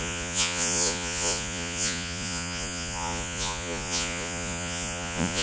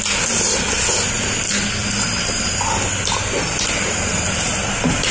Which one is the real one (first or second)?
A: second